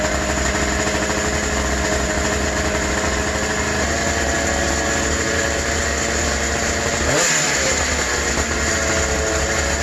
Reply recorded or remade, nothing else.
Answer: recorded